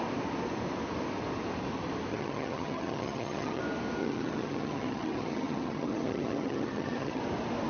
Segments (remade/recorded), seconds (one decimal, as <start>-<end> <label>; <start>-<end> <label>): 0.0-2.1 recorded; 2.1-3.6 remade; 3.6-4.0 recorded; 4.0-7.2 remade; 7.2-7.7 recorded